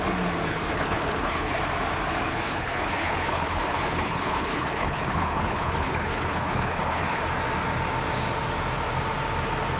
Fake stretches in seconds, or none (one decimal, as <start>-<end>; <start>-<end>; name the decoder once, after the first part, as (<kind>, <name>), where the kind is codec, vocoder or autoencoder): 0.5-1.6 (codec, HILCodec); 2.3-7.2